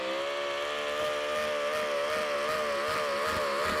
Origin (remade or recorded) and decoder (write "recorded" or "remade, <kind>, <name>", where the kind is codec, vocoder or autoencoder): recorded